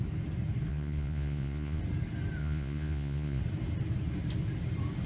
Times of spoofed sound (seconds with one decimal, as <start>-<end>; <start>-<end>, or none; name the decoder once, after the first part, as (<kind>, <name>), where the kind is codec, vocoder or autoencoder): 0.7-1.8 (vocoder, Vocos); 2.4-3.4